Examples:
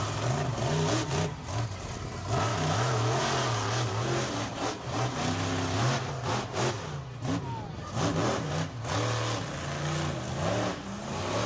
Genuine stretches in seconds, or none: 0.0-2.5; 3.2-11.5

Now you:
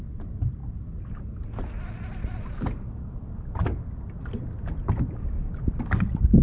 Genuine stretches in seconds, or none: 0.0-6.4

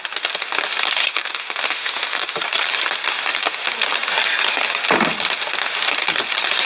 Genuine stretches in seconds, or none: 0.0-1.1; 2.4-6.7

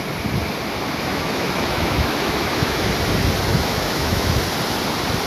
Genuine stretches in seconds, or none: 0.0-1.1; 2.9-3.5; 4.4-5.3

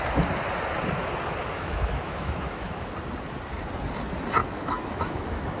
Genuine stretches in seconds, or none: 0.0-1.4; 2.9-4.4